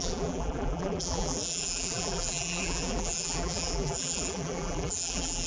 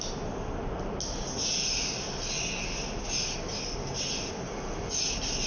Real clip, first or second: second